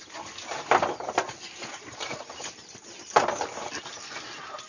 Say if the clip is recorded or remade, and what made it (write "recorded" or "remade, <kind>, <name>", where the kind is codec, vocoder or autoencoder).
recorded